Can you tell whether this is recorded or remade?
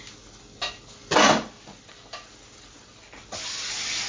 recorded